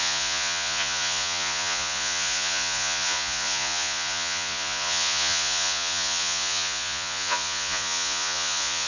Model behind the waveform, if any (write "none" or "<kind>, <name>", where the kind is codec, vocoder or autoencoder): vocoder, Vocos